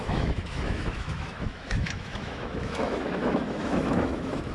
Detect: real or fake fake